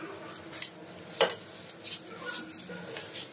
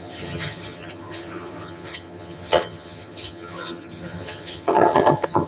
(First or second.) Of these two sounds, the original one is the first